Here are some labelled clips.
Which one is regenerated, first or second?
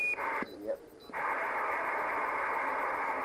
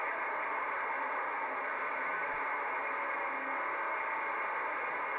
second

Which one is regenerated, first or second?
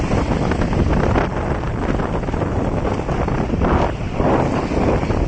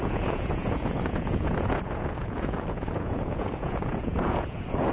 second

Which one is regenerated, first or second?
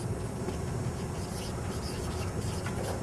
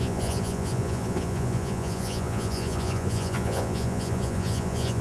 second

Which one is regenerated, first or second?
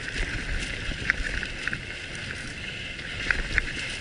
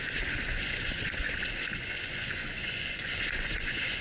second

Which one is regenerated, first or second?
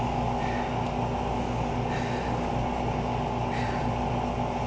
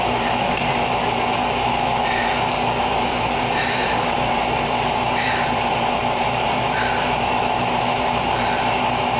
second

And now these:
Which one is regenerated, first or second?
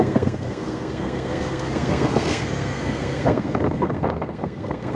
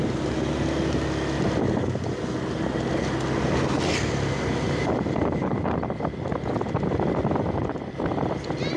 first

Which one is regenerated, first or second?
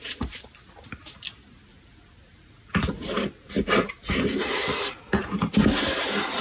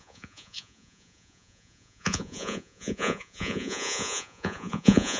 second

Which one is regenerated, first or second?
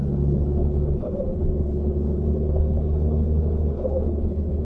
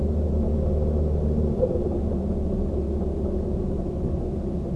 first